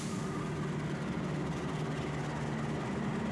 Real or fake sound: real